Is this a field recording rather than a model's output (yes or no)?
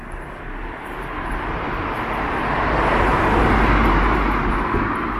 no